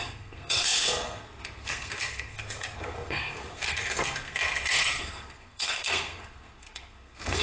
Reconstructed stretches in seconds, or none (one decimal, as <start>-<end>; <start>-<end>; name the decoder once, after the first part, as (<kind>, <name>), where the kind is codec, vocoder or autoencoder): 0.0-7.4 (codec, SNAC)